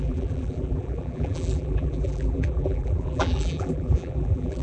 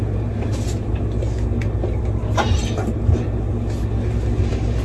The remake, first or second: first